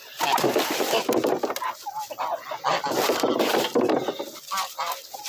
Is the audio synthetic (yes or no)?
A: no